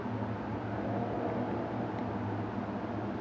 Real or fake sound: real